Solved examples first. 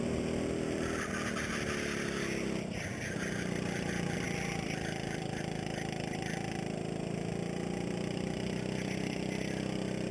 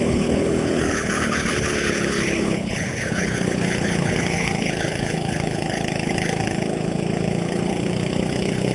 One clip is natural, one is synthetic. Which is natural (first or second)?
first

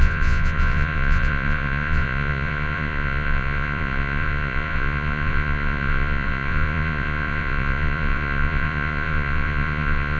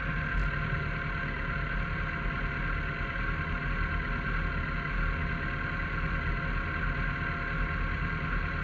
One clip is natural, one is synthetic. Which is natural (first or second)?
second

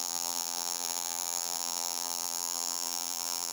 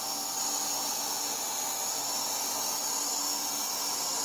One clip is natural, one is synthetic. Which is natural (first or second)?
second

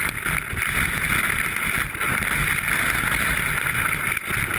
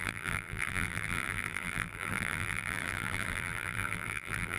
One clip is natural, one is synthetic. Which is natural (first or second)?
first